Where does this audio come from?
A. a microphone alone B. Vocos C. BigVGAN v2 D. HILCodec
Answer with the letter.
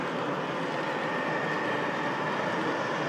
A